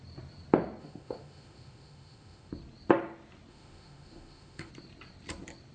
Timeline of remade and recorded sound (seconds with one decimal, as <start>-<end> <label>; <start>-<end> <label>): 0.0-0.8 recorded; 0.8-2.5 remade; 2.5-3.5 recorded; 3.5-4.7 remade; 4.7-5.7 recorded